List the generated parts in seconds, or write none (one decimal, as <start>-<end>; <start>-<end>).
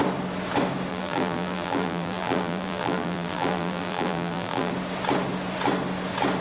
0.9-4.7